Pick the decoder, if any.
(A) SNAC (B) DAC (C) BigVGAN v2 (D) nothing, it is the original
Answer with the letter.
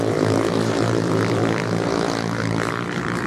C